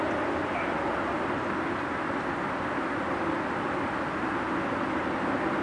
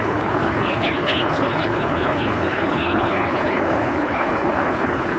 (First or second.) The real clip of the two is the first